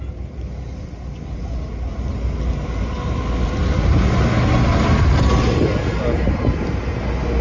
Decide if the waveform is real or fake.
real